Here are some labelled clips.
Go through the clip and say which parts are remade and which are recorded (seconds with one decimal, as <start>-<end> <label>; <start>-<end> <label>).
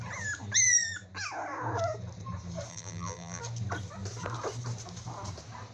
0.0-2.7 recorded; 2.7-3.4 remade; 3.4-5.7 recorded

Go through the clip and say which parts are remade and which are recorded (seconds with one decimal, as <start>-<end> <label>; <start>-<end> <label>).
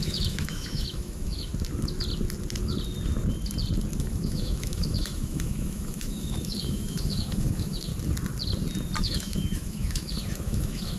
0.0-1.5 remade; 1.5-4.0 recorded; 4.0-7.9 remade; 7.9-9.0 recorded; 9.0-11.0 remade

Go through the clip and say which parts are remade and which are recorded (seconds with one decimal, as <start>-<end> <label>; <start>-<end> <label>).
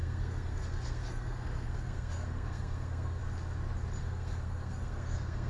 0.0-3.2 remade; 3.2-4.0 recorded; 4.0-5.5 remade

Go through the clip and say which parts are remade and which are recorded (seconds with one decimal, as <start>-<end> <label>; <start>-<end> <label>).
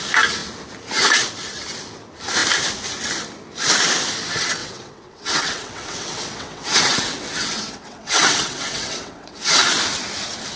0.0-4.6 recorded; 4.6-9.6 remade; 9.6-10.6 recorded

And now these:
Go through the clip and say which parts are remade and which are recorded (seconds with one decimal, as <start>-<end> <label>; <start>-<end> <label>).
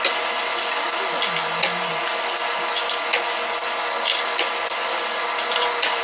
0.0-6.0 recorded